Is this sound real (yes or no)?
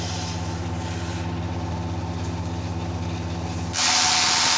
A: yes